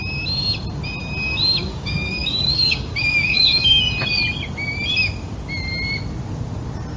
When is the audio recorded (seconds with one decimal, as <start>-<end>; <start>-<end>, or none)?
0.0-1.7; 3.8-7.0